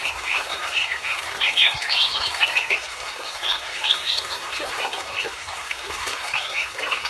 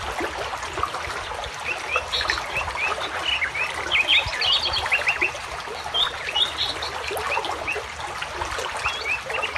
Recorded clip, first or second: second